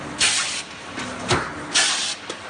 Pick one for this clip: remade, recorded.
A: recorded